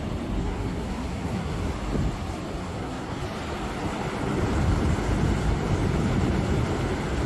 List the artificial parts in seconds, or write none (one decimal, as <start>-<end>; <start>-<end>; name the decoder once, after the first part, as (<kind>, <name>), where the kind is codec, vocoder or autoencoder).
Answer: 0.4-1.7 (codec, SNAC); 2.6-3.2